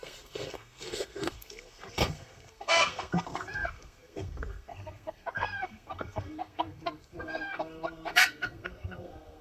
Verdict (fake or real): fake